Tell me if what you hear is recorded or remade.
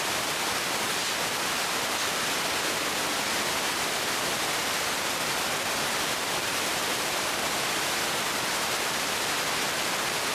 recorded